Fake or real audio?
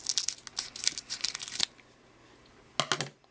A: real